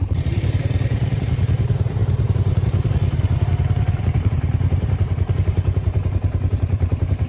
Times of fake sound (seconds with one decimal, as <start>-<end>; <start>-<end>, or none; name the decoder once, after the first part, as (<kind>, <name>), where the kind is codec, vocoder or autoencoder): 0.0-2.0 (vocoder, BigVGAN v2); 4.0-7.3